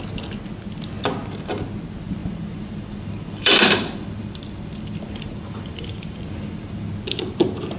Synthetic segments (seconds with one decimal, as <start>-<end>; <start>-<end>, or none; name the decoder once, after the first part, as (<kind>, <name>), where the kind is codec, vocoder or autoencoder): 2.2-6.9 (vocoder, BigVGAN v2)